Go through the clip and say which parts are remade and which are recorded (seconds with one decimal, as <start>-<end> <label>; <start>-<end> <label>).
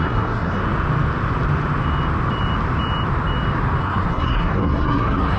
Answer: 0.0-0.6 remade; 0.6-3.8 recorded; 3.8-5.4 remade